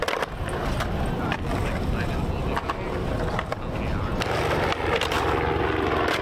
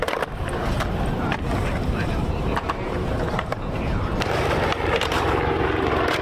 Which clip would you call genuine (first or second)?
first